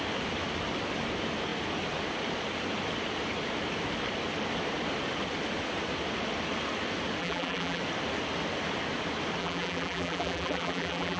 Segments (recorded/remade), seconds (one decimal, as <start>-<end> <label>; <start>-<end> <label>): 0.0-7.2 recorded; 7.2-7.8 remade; 7.8-9.4 recorded; 9.4-11.2 remade